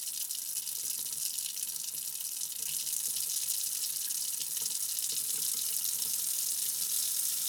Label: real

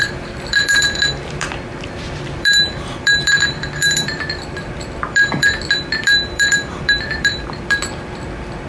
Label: fake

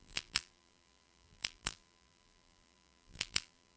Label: fake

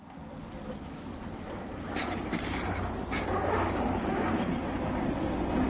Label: real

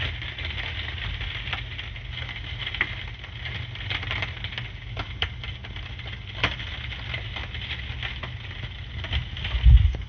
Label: real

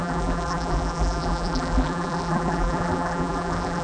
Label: fake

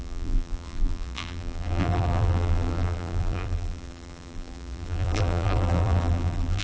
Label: fake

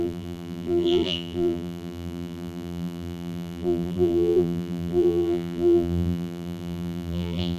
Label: fake